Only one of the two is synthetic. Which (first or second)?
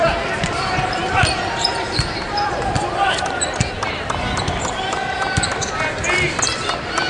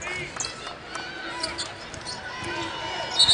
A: first